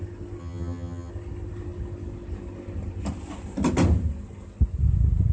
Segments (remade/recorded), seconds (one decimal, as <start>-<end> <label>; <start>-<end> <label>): 0.0-0.4 recorded; 0.4-1.1 remade; 1.1-5.3 recorded